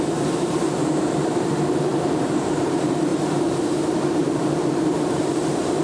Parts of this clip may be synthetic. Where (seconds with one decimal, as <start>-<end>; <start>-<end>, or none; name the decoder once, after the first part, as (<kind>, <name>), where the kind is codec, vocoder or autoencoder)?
0.0-5.8 (vocoder, BigVGAN v2)